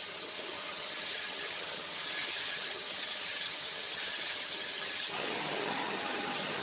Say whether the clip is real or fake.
fake